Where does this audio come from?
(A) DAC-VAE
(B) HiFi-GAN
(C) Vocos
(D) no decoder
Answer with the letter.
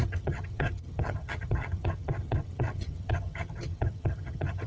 B